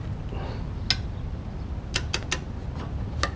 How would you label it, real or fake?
real